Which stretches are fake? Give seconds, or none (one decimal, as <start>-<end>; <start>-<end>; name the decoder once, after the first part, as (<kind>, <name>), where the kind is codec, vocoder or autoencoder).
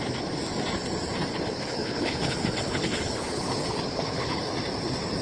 1.3-4.4 (codec, HILCodec)